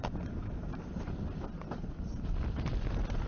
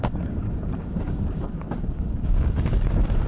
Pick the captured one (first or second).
first